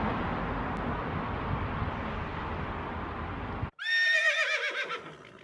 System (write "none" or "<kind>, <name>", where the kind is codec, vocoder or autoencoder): none